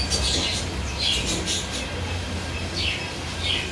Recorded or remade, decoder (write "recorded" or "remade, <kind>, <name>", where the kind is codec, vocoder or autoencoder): recorded